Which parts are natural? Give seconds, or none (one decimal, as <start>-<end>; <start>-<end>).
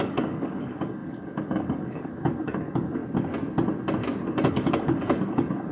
3.0-4.5